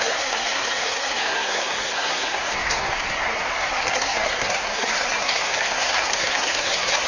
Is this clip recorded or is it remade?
remade